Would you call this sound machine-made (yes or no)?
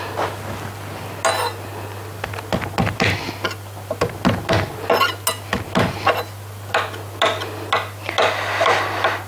no